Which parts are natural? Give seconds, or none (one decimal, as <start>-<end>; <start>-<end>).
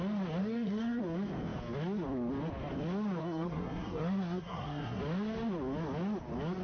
0.0-0.4; 1.0-3.2; 5.0-6.6